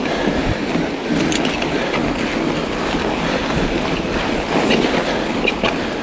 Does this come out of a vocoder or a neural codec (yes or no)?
no